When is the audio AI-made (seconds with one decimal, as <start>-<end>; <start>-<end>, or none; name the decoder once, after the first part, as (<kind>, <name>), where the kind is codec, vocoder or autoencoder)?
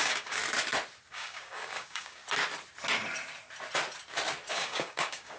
0.0-0.4 (codec, DAC); 1.1-2.2; 4.5-5.4